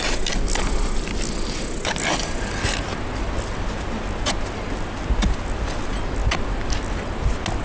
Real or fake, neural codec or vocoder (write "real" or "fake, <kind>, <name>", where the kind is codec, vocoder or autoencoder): real